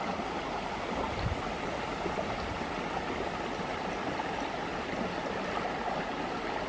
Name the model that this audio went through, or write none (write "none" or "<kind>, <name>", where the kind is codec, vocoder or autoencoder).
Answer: none